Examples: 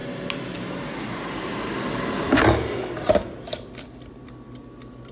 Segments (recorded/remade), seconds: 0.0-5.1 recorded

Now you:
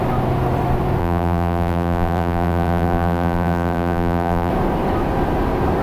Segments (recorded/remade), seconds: 0.0-1.0 recorded; 1.0-4.5 remade; 4.5-5.8 recorded

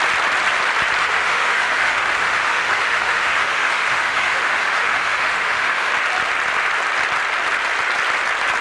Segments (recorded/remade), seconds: 0.0-1.0 recorded; 1.0-5.9 remade; 5.9-8.6 recorded

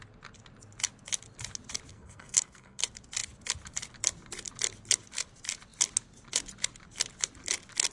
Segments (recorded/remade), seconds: 0.0-1.9 recorded; 1.9-2.8 remade; 2.8-7.9 recorded

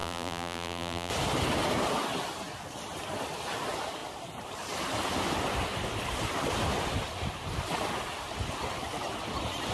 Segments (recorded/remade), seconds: 0.0-1.1 remade; 1.1-9.7 recorded